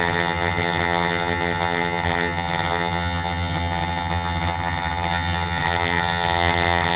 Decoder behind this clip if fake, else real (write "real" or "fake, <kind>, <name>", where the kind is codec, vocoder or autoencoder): fake, vocoder, HiFi-GAN